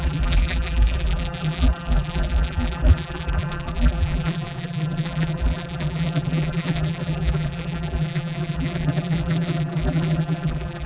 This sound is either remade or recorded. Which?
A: remade